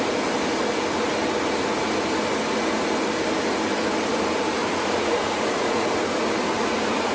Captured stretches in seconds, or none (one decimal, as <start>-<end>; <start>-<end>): 0.0-4.6; 5.9-7.1